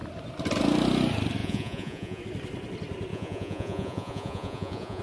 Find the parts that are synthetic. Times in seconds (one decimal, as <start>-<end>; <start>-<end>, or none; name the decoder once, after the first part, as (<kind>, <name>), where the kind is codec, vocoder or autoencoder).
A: 1.4-2.2 (vocoder, Vocos); 3.1-5.0